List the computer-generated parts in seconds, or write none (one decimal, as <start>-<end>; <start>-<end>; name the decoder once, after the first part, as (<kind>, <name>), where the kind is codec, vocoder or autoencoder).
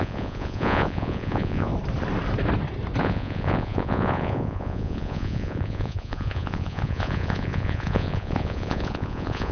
0.0-1.7 (vocoder, Vocos); 3.0-9.5